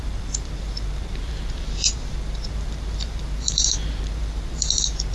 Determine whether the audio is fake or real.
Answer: fake